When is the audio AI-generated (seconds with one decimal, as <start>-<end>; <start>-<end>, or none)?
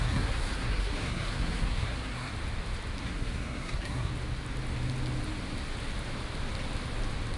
0.0-2.3; 3.0-4.1